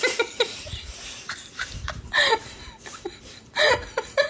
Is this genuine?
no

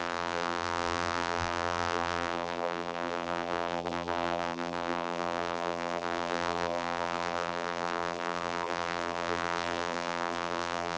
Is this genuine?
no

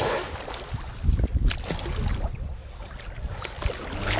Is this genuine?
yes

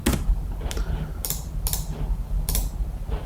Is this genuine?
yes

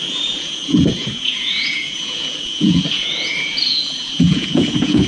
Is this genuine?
no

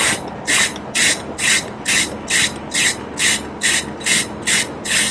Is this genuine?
yes